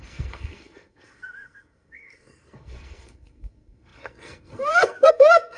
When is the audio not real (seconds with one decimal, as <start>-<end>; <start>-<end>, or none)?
0.0-5.6